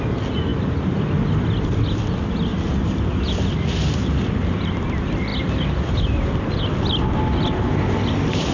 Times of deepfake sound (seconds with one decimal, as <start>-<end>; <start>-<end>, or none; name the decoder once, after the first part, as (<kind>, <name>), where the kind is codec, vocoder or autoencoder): none

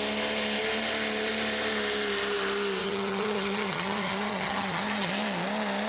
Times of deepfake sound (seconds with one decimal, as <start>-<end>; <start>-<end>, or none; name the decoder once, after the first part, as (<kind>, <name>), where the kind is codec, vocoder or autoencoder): 2.8-5.1 (vocoder, HiFi-GAN)

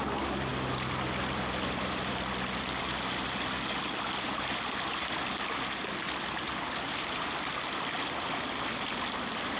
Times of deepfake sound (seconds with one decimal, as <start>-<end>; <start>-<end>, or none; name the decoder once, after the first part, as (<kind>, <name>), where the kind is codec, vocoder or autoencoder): none

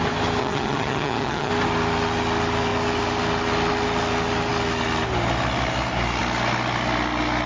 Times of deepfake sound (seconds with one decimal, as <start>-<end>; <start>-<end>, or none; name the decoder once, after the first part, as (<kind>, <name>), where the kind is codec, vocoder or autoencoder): 0.4-1.5 (vocoder, HiFi-GAN)

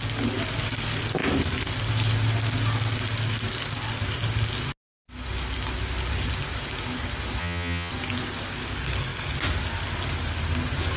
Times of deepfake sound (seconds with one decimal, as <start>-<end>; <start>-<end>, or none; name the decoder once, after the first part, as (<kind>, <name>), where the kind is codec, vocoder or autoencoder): 7.4-7.9 (vocoder, HiFi-GAN)

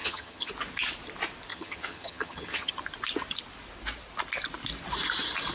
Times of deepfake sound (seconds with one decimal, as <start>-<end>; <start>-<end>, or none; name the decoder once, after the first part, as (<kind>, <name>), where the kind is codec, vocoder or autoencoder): 0.0-0.5 (vocoder, HiFi-GAN); 1.5-2.7